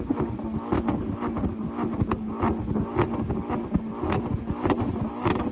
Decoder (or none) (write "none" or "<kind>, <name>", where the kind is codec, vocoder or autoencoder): none